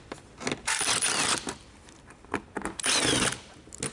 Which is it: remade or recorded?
recorded